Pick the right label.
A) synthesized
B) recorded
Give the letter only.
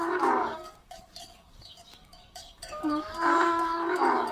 A